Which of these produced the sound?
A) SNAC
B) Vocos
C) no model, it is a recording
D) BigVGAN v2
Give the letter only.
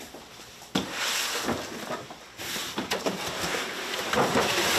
C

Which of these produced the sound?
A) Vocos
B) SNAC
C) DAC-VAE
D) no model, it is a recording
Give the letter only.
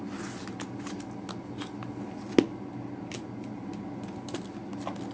D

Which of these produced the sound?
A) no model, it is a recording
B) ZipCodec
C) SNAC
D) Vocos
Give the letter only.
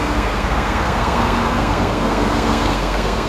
C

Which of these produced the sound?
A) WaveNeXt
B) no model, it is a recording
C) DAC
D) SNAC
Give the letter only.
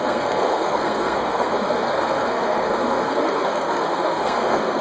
D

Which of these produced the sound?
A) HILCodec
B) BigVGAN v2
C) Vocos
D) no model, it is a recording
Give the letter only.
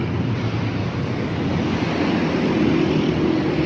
D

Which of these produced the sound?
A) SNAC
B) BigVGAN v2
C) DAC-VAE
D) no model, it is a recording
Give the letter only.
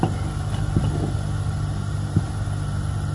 D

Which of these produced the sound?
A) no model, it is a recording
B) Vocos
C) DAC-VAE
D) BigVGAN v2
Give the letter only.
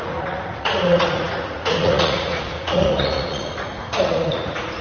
B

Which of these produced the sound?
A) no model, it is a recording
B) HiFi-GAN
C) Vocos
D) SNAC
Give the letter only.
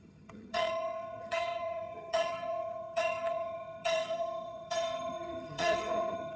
B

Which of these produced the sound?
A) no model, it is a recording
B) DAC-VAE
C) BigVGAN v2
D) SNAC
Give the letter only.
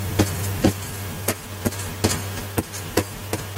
A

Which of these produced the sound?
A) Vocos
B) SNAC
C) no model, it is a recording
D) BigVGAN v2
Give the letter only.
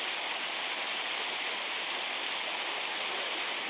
C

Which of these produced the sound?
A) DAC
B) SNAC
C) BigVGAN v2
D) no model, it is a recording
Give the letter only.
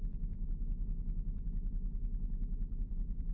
C